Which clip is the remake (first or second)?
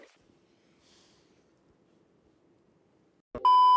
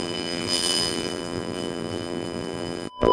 second